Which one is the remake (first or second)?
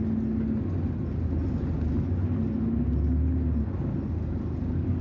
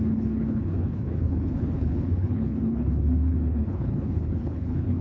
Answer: second